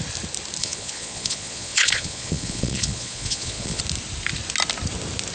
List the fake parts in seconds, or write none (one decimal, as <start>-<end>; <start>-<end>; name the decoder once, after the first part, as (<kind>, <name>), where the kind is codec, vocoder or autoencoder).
0.6-3.8 (vocoder, Vocos)